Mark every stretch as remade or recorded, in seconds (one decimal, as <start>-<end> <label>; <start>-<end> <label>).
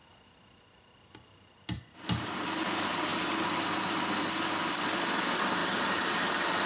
0.0-1.8 remade; 1.8-5.6 recorded; 5.6-6.3 remade; 6.3-6.7 recorded